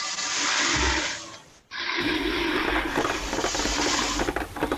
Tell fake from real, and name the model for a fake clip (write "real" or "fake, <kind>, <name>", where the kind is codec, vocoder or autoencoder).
real